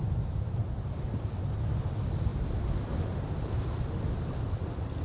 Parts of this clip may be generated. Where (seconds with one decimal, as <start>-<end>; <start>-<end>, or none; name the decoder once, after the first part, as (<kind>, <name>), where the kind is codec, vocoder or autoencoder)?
none